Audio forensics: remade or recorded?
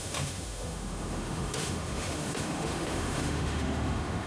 remade